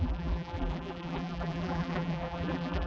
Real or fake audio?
fake